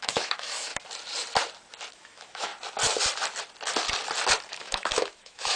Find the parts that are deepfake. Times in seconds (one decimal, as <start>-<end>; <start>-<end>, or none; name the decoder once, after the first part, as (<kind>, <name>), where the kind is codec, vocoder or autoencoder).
0.0-0.7 (autoencoder, DAC-VAE); 1.9-2.5; 4.5-5.6